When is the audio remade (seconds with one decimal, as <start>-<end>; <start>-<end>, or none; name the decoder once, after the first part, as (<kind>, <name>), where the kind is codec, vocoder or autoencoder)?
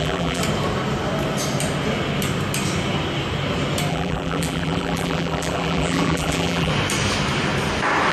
0.0-0.4 (vocoder, BigVGAN v2); 3.9-6.7